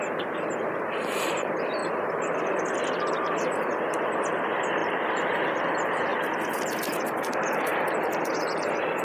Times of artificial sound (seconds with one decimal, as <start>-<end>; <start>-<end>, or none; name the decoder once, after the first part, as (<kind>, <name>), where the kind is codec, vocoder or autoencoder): 1.8-3.8 (vocoder, BigVGAN v2); 4.8-5.6; 6.1-6.9